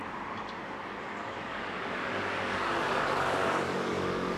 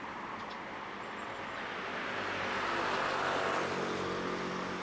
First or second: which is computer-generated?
first